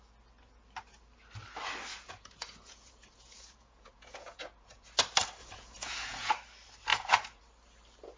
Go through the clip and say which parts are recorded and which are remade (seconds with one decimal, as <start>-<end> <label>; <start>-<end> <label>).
0.0-1.9 recorded; 1.9-4.9 remade; 4.9-5.4 recorded; 5.4-6.3 remade; 6.3-6.9 recorded; 6.9-7.4 remade; 7.4-8.2 recorded